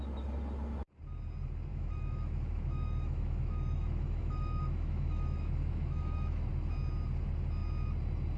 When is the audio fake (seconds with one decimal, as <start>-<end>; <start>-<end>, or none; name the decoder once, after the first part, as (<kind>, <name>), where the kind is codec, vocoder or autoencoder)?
1.7-6.5 (autoencoder, DAC-VAE)